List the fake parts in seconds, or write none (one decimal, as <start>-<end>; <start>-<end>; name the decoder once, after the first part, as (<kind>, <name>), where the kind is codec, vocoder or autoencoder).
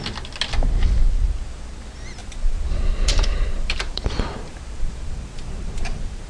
2.2-6.3 (vocoder, BigVGAN v2)